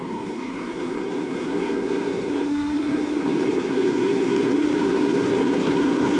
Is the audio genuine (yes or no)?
no